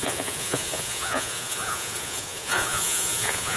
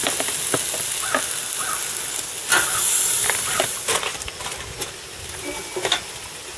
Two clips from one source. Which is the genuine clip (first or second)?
second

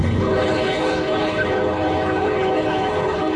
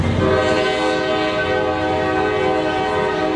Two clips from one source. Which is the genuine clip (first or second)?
second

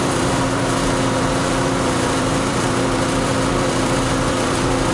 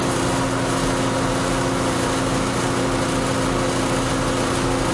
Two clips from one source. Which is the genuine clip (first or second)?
second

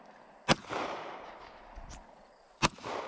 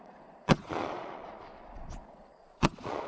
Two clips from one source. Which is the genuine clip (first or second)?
first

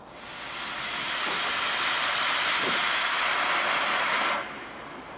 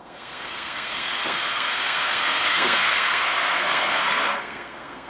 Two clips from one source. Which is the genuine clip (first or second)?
first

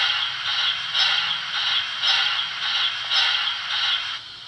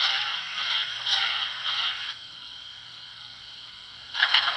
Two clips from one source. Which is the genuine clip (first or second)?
first